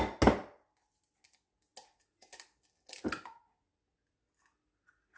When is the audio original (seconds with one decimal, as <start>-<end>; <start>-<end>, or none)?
0.0-5.2